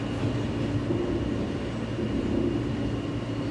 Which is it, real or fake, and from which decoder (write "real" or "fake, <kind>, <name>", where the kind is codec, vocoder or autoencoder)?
real